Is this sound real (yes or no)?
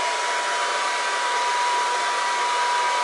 yes